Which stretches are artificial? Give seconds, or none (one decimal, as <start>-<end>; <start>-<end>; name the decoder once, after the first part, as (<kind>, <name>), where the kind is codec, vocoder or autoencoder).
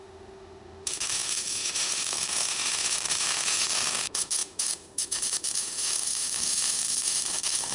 0.0-7.7 (autoencoder, DAC-VAE)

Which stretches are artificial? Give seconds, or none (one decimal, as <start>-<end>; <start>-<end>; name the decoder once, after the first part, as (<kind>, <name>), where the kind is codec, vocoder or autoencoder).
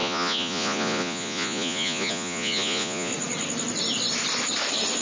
0.0-3.1 (vocoder, Vocos)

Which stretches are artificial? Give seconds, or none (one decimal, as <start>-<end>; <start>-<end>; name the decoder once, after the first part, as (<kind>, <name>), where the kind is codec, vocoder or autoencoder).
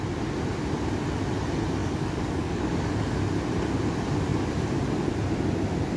1.8-3.2 (codec, DAC)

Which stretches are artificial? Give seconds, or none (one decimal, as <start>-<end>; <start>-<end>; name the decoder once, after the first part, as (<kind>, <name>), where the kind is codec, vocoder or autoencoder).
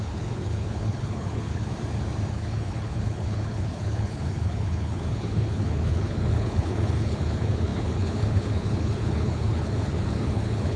0.0-1.7 (codec, HILCodec); 2.3-10.8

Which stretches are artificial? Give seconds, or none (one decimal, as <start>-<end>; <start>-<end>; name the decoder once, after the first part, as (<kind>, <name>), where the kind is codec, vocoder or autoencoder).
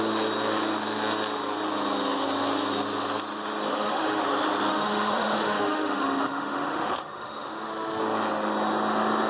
3.7-4.2 (autoencoder, DAC-VAE); 4.7-8.0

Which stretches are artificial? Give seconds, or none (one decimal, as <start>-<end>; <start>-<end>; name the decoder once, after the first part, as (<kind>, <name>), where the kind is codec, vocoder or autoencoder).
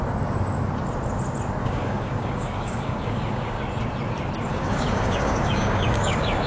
1.6-3.6 (codec, DAC); 4.5-6.5